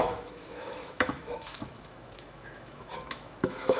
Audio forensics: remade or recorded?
remade